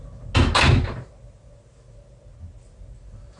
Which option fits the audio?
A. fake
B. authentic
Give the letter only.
B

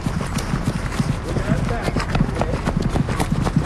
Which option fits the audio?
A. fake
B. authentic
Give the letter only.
B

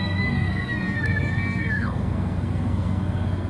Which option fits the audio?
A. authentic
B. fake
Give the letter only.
B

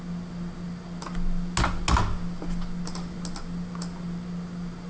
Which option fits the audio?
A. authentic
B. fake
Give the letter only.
A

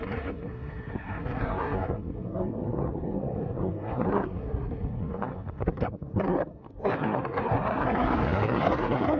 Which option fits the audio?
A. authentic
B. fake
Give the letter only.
B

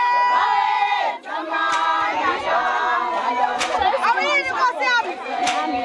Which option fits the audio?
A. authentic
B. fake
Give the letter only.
A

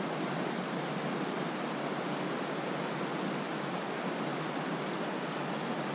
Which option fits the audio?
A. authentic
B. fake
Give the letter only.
A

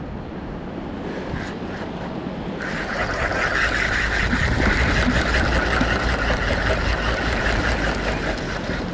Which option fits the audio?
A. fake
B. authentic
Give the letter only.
B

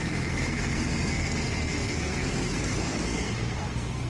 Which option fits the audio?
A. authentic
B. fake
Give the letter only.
B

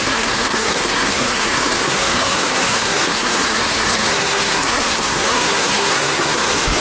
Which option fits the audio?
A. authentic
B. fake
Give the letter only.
B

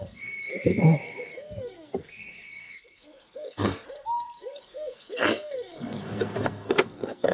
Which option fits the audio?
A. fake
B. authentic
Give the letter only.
A